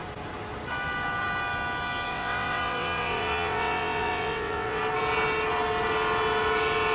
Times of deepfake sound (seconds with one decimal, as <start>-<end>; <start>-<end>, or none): 2.1-4.8